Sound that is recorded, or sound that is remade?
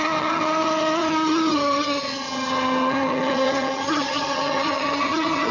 remade